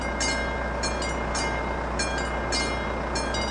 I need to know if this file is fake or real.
real